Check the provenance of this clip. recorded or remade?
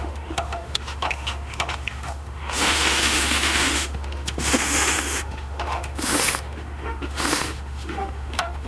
remade